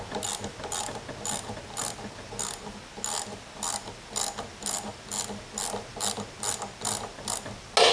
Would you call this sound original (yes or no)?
yes